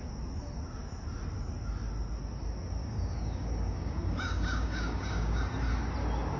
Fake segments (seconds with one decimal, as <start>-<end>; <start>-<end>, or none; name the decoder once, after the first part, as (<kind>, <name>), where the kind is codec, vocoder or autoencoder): 2.8-5.4 (codec, DAC)